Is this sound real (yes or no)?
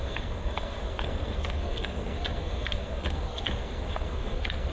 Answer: no